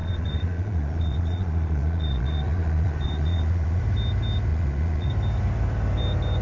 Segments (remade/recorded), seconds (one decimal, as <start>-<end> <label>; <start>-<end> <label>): 0.0-3.8 remade; 3.8-4.5 recorded; 4.5-5.1 remade; 5.1-6.4 recorded